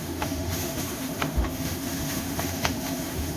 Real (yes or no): no